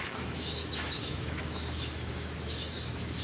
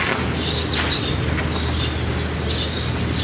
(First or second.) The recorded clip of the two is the second